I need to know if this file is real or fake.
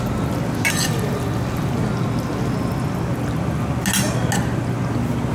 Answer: real